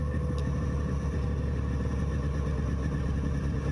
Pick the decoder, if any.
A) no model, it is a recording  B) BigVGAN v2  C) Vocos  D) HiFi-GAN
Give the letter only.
A